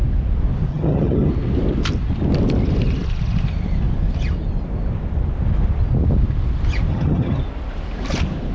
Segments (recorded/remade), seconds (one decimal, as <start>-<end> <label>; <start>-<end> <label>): 0.0-0.7 recorded; 0.7-1.3 remade; 1.3-6.9 recorded; 6.9-7.4 remade; 7.4-8.5 recorded